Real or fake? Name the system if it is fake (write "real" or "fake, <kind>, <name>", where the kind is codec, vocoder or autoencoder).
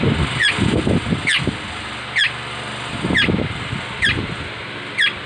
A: real